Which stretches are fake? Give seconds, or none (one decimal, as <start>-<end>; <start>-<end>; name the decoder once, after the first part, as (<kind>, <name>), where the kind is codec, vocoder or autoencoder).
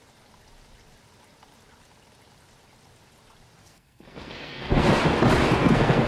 3.6-5.0 (codec, SNAC); 5.6-6.1